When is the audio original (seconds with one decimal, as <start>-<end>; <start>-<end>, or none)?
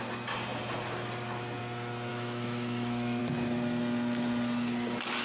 0.0-2.1; 3.2-5.2